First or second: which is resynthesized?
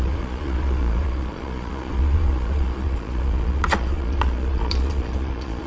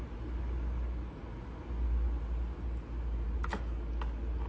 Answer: first